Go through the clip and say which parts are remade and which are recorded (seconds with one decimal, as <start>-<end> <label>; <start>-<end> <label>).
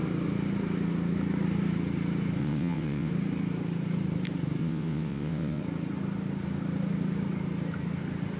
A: 0.0-2.4 recorded; 2.4-3.1 remade; 3.1-4.6 recorded; 4.6-5.6 remade; 5.6-8.4 recorded